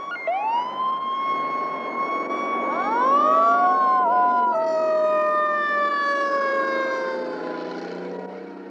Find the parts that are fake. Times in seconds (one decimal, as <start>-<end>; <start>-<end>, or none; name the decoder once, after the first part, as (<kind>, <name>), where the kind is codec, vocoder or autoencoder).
none